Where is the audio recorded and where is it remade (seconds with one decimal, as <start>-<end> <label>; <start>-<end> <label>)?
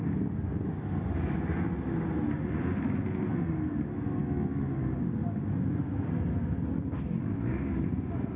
0.0-8.4 recorded